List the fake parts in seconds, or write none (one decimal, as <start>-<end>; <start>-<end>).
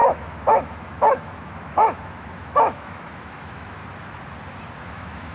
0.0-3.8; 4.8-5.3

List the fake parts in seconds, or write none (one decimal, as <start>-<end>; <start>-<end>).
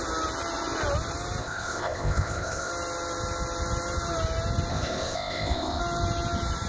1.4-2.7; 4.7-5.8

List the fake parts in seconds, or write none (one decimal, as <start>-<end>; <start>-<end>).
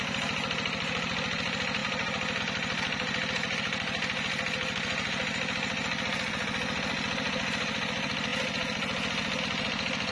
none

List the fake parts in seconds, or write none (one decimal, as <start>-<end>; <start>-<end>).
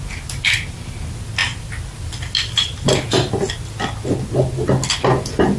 none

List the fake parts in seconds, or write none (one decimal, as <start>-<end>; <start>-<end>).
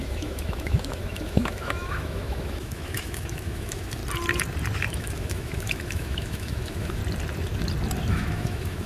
0.0-4.0; 4.9-7.0; 8.1-8.9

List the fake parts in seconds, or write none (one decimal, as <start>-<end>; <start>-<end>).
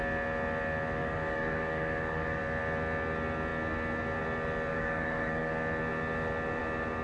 1.0-2.4; 4.7-5.5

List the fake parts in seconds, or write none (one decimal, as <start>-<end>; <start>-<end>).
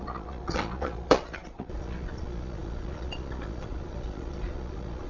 0.0-5.1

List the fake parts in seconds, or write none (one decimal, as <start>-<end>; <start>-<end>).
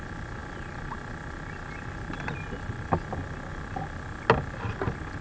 none